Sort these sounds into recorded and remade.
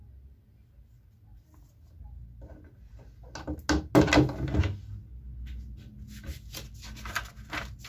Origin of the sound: recorded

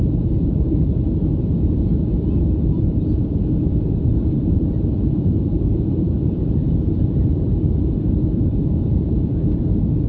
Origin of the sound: remade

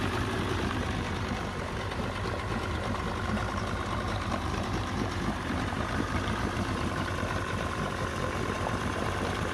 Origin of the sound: remade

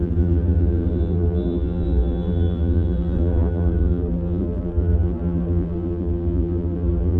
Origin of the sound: remade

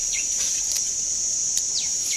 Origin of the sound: remade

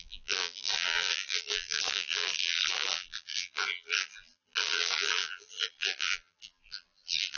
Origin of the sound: remade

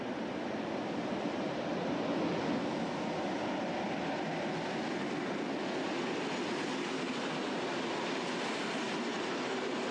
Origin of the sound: recorded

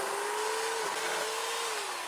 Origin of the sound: recorded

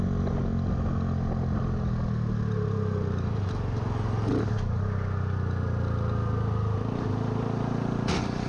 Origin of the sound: recorded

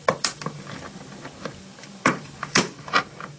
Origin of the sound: remade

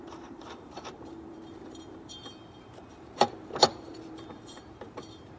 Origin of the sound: remade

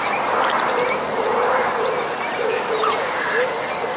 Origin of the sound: remade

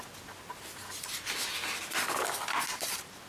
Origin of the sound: recorded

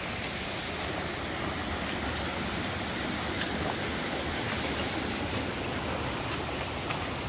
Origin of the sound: recorded